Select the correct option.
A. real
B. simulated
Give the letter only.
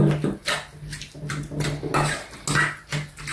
A